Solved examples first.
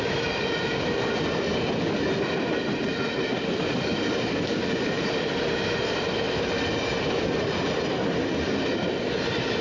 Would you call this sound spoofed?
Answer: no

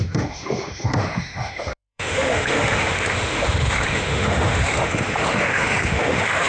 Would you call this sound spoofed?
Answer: yes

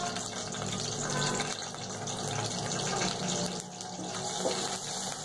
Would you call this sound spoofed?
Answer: no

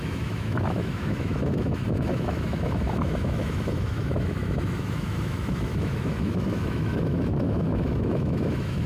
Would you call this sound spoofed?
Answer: yes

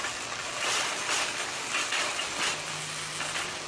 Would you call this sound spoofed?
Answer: no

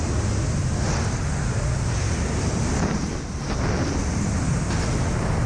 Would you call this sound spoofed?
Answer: no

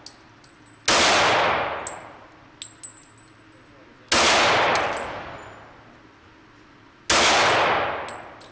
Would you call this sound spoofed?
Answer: no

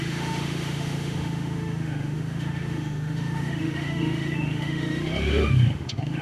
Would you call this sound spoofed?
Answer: yes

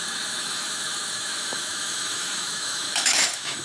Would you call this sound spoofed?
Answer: yes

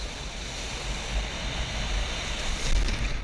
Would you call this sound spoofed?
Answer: no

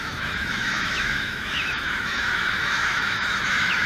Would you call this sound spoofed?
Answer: yes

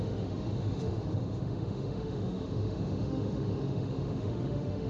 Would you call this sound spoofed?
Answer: yes